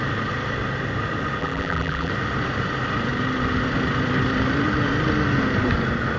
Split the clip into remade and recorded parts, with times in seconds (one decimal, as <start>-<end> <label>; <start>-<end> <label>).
0.0-1.4 recorded; 1.4-2.1 remade; 2.1-6.2 recorded